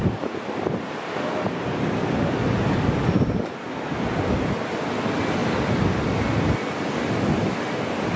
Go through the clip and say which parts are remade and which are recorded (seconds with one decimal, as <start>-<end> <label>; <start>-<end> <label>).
0.0-8.2 recorded